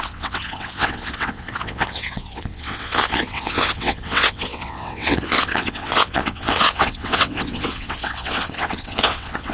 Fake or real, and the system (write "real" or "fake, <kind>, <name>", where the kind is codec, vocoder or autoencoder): fake, vocoder, WaveNeXt